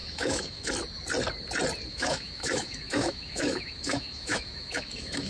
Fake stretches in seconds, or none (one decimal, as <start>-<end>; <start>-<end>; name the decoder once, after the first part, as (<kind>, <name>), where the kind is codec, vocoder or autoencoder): 0.0-0.7 (autoencoder, DAC-VAE); 1.9-5.3